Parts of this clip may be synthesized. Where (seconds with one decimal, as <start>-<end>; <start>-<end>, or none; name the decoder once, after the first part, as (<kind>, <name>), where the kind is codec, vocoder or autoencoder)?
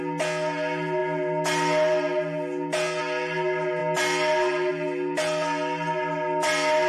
none